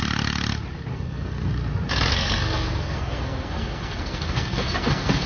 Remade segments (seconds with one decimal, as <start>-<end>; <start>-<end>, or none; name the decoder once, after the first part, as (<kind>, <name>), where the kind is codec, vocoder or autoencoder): 0.9-1.5 (codec, SNAC); 2.1-5.3